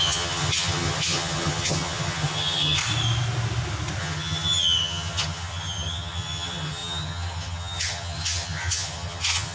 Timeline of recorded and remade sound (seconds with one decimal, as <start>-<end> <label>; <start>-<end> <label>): 0.0-2.8 remade; 2.8-4.0 recorded; 4.0-9.5 remade